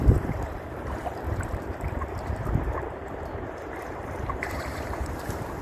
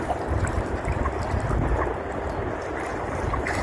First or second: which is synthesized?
first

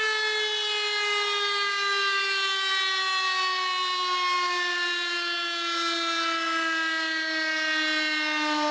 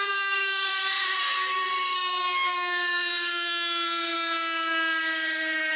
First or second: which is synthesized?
second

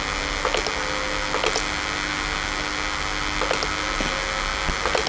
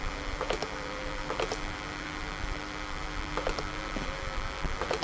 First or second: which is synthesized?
second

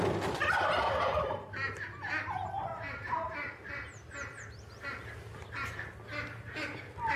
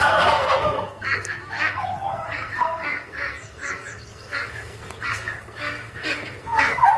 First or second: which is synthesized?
second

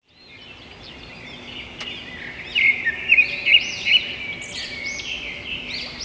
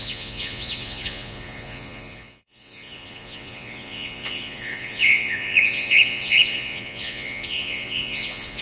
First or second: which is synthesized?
second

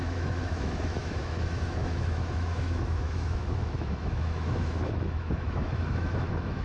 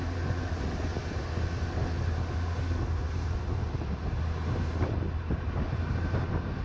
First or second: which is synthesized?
first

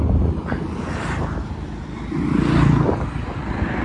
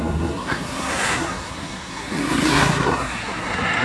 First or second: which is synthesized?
second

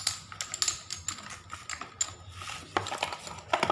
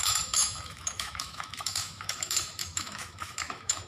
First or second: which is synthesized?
second